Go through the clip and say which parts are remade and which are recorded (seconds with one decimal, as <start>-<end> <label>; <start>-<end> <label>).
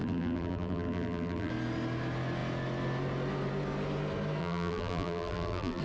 0.0-1.5 remade; 1.5-4.4 recorded; 4.4-5.8 remade